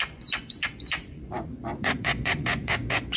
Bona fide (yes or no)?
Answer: no